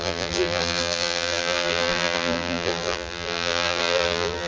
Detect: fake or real fake